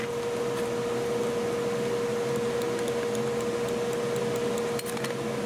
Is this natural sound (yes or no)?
yes